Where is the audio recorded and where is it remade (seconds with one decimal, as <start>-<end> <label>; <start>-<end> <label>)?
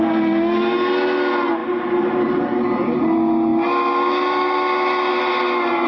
0.0-5.9 recorded